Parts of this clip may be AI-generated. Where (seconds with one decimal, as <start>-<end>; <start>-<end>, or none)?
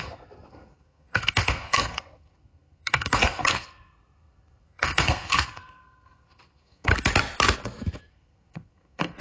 0.0-6.9; 8.1-9.2